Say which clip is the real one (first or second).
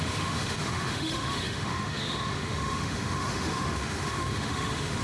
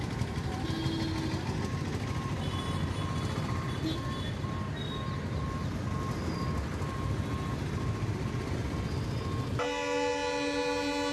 second